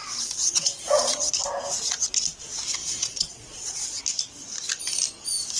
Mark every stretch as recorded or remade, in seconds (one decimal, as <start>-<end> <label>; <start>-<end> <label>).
0.0-1.3 remade; 1.3-2.8 recorded; 2.8-4.0 remade; 4.0-5.6 recorded